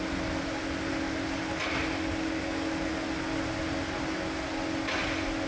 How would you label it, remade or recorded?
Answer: recorded